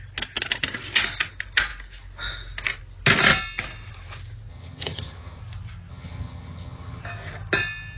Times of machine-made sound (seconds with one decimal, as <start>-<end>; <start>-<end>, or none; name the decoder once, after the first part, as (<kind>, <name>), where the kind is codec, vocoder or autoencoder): 4.5-5.4 (vocoder, HiFi-GAN); 5.9-7.0